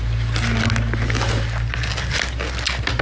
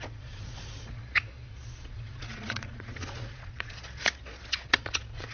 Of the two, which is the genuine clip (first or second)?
first